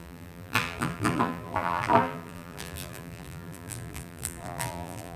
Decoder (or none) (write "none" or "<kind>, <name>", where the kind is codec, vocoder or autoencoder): vocoder, BigVGAN v2